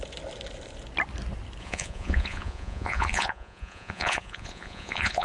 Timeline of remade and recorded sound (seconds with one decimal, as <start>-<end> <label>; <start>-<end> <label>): 0.0-1.6 recorded; 1.6-5.2 remade